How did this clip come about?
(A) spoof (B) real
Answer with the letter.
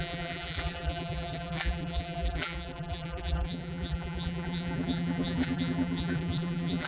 A